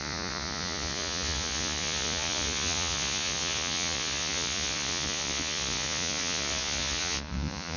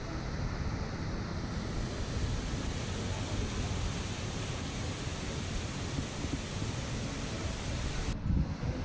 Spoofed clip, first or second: first